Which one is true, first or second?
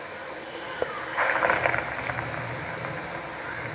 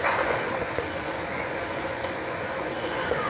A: first